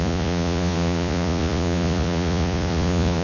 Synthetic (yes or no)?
yes